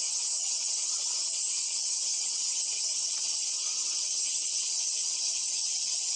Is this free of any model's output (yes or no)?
no